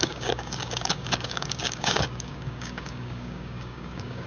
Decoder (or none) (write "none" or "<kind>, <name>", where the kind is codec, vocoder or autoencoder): codec, DAC